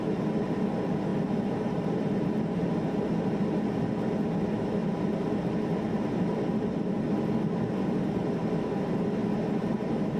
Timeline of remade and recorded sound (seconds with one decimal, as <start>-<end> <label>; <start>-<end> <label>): 0.0-10.2 recorded